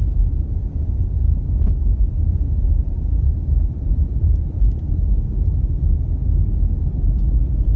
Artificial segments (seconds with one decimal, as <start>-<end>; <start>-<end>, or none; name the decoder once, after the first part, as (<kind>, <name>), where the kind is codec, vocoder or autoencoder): 1.0-5.4 (vocoder, BigVGAN v2)